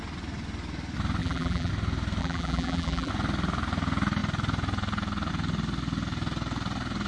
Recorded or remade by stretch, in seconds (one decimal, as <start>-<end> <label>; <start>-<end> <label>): 0.0-1.2 recorded; 1.2-1.7 remade; 1.7-2.2 recorded; 2.2-3.1 remade; 3.1-7.1 recorded